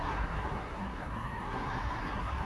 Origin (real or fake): fake